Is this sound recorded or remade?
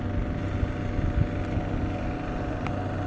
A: recorded